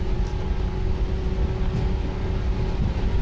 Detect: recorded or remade recorded